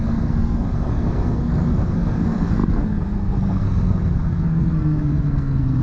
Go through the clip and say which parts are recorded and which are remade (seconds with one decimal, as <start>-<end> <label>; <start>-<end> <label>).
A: 0.0-5.8 remade